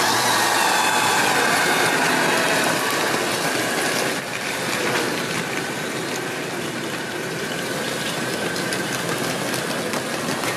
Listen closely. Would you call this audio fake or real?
real